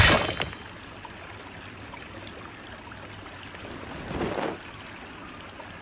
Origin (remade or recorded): recorded